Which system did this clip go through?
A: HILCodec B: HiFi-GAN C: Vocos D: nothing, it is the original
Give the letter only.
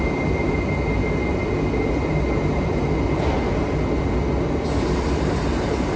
D